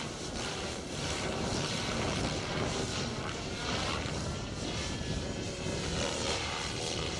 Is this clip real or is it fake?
fake